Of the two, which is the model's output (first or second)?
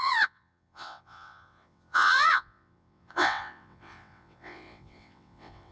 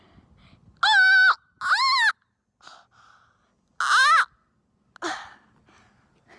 first